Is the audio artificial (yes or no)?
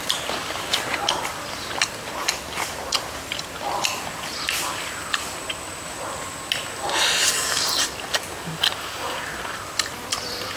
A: no